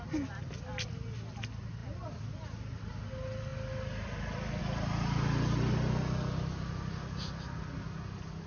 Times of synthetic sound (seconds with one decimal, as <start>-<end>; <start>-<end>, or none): none